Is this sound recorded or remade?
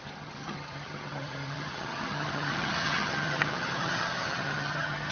remade